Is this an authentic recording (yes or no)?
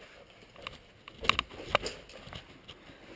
yes